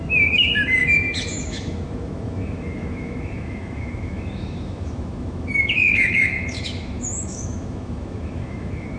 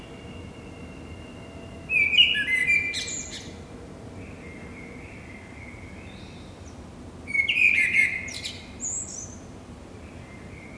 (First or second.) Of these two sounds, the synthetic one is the first